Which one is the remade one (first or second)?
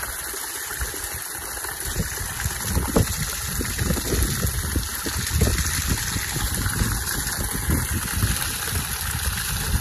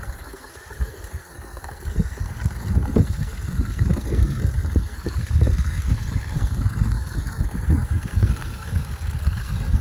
second